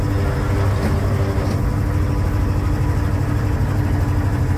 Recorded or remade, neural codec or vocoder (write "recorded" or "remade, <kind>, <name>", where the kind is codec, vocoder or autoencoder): recorded